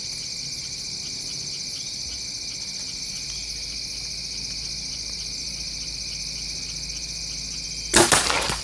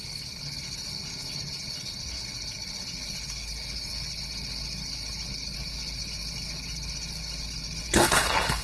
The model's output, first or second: second